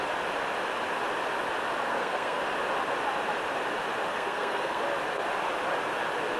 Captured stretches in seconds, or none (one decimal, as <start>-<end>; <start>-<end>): 0.0-1.9; 2.4-4.1; 4.8-6.4